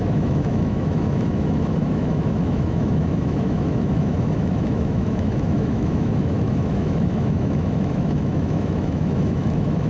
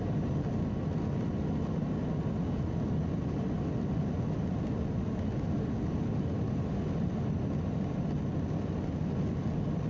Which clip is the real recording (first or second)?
second